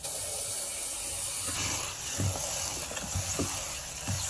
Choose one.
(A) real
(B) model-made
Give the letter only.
A